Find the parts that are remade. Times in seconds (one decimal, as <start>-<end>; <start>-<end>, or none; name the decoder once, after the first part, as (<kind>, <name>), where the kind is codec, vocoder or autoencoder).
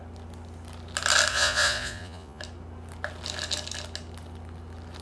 1.3-2.4 (vocoder, Vocos)